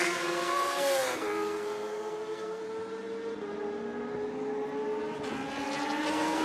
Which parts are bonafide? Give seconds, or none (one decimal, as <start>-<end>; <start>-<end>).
2.6-6.0